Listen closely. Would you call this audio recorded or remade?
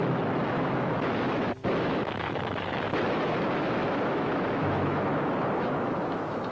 remade